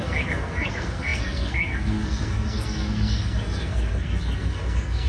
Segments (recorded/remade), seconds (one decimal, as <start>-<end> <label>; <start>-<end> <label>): 0.0-5.1 remade